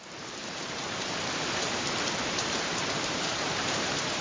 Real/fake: fake